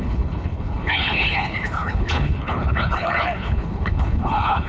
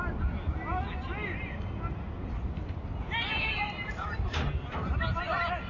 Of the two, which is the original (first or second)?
second